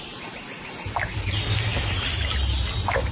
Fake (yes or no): no